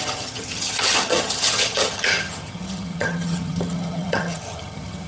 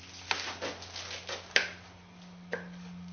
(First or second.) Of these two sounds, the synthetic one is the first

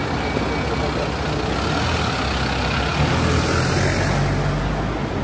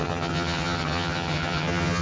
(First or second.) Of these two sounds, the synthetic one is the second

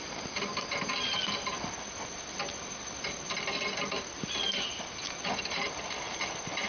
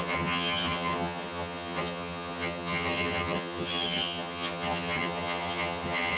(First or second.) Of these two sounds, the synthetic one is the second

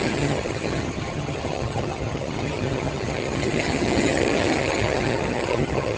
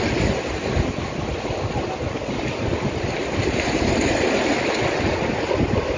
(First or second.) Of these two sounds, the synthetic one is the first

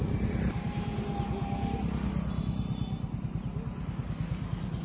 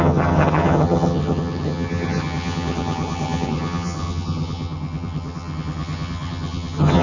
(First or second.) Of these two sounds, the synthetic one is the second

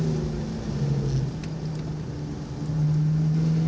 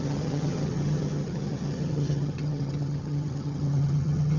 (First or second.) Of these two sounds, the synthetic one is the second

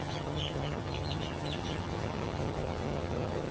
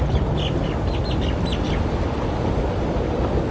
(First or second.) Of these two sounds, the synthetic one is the first